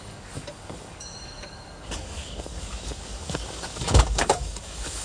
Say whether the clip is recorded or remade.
remade